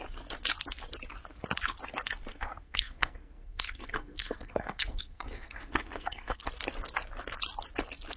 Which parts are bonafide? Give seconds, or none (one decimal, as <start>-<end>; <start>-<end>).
0.0-2.3; 6.5-8.2